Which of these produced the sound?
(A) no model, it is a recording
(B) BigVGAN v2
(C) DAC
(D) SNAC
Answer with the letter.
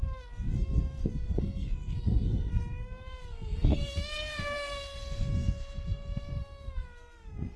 D